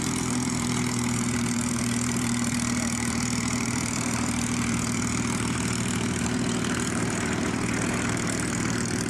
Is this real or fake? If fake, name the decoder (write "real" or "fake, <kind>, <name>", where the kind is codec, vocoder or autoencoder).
fake, vocoder, BigVGAN v2